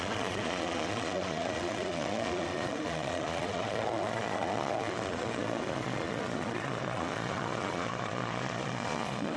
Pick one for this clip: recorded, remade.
remade